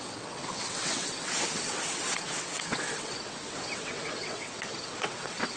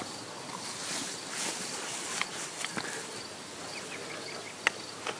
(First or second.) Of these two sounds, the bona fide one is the second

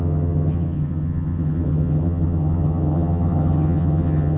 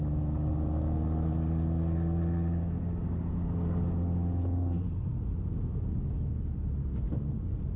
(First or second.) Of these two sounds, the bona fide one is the second